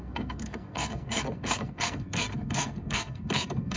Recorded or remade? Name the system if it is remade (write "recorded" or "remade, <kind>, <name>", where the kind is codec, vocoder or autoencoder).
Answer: remade, codec, SNAC